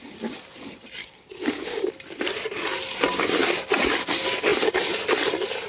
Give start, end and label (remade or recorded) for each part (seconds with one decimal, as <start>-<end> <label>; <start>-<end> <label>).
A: 0.0-1.0 recorded; 1.0-1.9 remade; 1.9-5.7 recorded